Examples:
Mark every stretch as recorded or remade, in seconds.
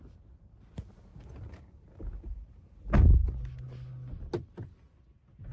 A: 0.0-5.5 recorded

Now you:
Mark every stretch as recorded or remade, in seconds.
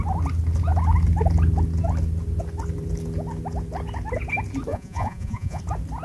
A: 0.0-4.7 recorded; 4.7-5.6 remade; 5.6-6.0 recorded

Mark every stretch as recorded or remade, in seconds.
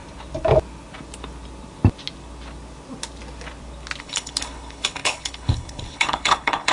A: 0.0-4.0 recorded; 4.0-6.7 remade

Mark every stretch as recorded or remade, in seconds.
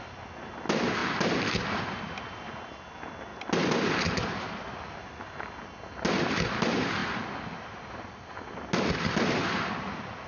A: 0.0-10.3 recorded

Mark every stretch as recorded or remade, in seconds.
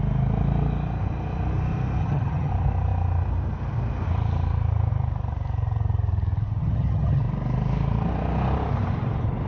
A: 0.0-2.0 recorded; 2.0-2.5 remade; 2.5-6.6 recorded; 6.6-7.2 remade; 7.2-9.5 recorded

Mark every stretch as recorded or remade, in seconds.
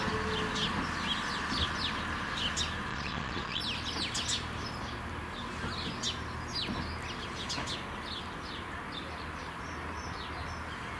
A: 0.0-2.9 recorded; 2.9-3.6 remade; 3.6-11.0 recorded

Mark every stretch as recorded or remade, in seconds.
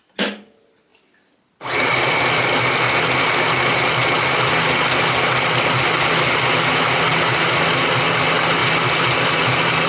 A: 0.0-9.9 recorded